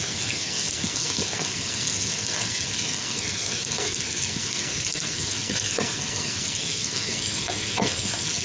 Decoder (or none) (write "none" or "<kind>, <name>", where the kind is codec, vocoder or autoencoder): codec, SNAC